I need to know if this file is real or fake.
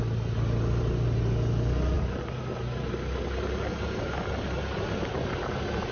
real